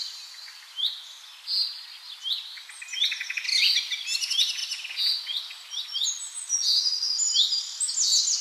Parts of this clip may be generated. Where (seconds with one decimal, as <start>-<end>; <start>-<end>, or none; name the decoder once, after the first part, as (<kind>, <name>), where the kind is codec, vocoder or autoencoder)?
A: none